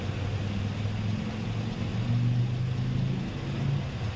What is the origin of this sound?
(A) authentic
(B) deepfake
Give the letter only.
A